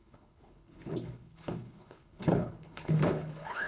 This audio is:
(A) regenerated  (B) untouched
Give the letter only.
A